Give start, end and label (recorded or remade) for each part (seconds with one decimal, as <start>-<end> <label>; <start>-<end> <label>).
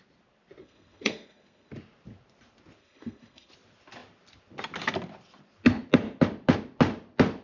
0.0-0.6 recorded; 0.6-1.7 remade; 1.7-2.8 recorded; 2.8-3.5 remade; 3.5-7.4 recorded